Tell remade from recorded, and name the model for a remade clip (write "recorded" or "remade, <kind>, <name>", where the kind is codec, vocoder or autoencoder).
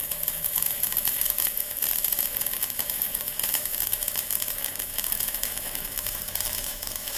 remade, autoencoder, DAC-VAE